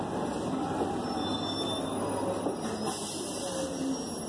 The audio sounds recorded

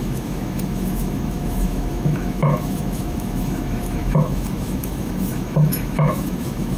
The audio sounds remade